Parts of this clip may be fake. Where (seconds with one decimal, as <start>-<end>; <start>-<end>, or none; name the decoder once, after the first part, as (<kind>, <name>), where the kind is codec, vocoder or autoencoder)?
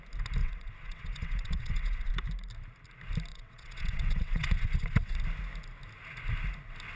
0.4-2.1 (vocoder, WaveNeXt); 3.3-5.2